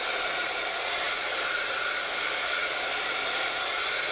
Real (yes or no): yes